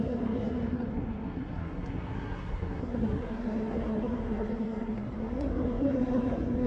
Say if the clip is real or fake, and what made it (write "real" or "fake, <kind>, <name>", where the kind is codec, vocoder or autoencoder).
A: fake, codec, SNAC